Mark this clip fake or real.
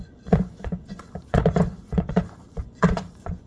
fake